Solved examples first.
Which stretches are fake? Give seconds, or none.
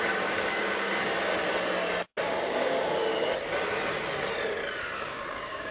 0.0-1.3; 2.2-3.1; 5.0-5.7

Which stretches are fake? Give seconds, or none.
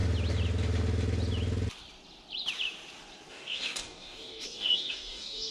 3.3-5.5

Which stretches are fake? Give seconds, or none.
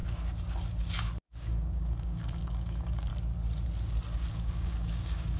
1.2-3.1; 4.3-5.4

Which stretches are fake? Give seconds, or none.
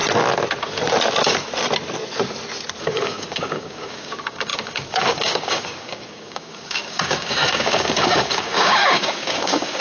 2.8-9.8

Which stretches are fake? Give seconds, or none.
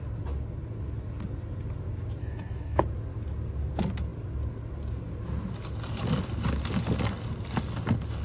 2.2-2.8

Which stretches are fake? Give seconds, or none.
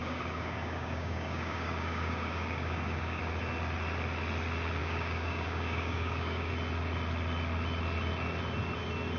0.0-3.2; 4.8-6.5